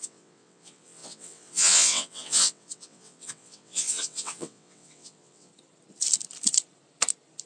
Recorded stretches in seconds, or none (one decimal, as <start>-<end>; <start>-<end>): 5.5-7.5